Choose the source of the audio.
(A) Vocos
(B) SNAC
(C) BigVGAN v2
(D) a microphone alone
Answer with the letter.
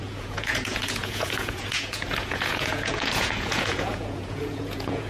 A